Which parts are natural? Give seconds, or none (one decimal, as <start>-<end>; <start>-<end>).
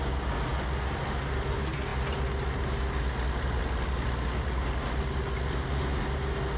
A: 0.0-6.6